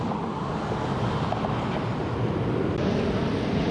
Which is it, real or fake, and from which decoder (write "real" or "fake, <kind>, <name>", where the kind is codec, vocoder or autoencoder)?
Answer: real